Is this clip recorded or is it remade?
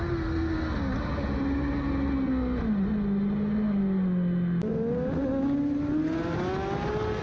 recorded